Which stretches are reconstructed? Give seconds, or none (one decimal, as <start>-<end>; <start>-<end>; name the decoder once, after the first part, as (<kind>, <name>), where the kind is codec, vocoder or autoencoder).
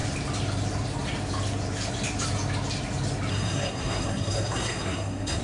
3.3-5.4 (codec, SNAC)